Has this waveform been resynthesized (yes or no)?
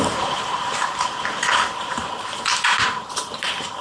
yes